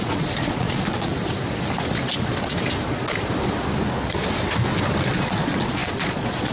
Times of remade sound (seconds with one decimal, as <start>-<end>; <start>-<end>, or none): 0.0-1.1; 5.0-6.5